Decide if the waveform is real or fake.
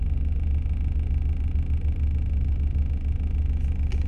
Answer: real